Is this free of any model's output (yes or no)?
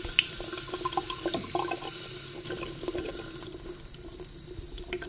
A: yes